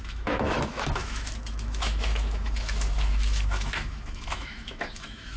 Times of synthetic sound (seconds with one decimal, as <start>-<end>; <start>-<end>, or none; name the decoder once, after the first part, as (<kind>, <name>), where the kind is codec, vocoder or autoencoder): 0.0-5.4 (autoencoder, DAC-VAE)